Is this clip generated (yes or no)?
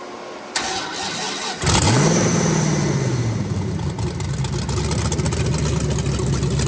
no